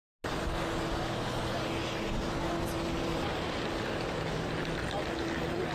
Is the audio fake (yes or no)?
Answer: no